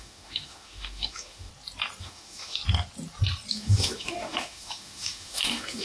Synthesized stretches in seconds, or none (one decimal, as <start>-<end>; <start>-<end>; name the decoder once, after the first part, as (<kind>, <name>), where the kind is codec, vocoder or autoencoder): 0.0-1.5 (autoencoder, DAC-VAE); 2.0-2.6; 3.5-5.8